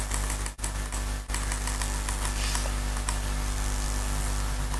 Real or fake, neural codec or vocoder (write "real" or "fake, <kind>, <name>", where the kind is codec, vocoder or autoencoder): real